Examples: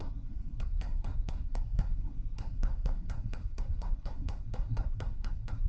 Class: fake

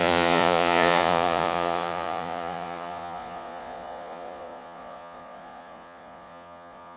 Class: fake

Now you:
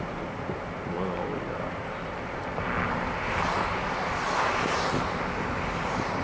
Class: real